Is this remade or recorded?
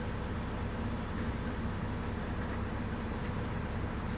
recorded